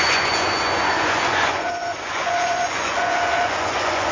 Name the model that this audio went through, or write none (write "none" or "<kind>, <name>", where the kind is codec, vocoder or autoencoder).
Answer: vocoder, Vocos